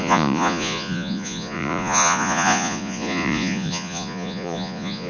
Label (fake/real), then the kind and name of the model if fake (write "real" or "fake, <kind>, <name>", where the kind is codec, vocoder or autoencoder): fake, vocoder, Vocos